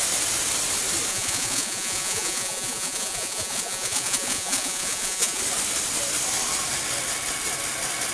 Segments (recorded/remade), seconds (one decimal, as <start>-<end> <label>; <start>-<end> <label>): 0.0-1.1 recorded; 1.1-5.4 remade; 5.4-8.1 recorded